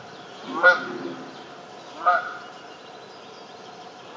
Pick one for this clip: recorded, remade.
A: recorded